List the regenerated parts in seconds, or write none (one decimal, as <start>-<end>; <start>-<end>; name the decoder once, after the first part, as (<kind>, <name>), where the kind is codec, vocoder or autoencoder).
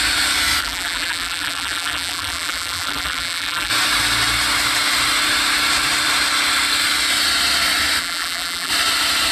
0.6-3.7 (vocoder, BigVGAN v2); 8.0-8.7